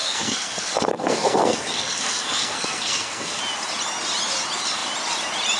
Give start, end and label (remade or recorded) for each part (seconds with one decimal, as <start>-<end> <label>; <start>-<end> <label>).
0.0-3.4 remade; 3.4-5.6 recorded